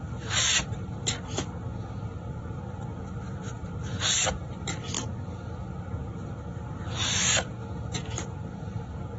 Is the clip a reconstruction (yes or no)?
no